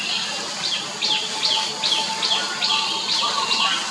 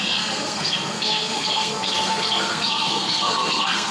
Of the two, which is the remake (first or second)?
second